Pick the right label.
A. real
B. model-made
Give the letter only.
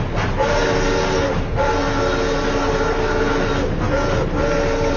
A